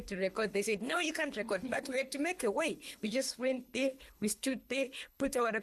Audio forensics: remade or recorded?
remade